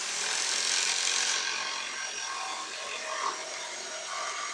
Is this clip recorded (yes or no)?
yes